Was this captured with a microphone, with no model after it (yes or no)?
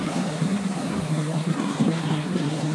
no